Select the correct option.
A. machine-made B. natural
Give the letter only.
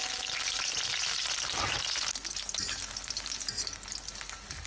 B